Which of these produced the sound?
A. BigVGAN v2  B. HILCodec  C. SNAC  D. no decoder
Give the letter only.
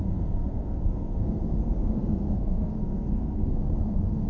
C